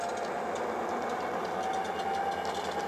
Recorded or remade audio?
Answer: recorded